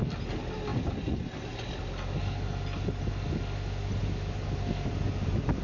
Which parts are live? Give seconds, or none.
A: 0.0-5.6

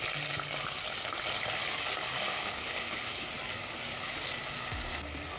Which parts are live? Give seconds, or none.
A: 0.0-2.3; 3.3-5.4